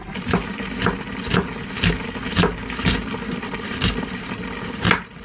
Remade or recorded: recorded